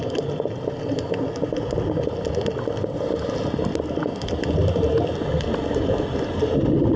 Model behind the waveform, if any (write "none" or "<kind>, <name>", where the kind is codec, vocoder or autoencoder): none